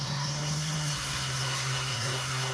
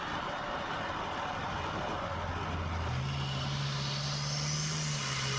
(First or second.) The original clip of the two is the second